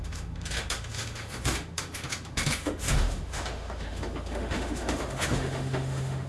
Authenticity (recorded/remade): remade